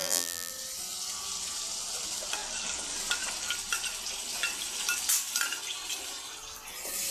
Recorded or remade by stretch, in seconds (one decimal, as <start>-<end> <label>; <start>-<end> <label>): 0.0-0.5 remade; 0.5-7.1 recorded